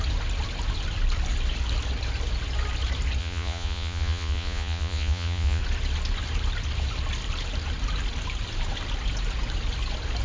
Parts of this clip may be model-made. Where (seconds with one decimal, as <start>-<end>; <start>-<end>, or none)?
3.2-5.6